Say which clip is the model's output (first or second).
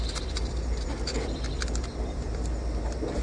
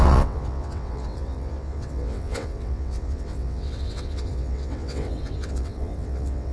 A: second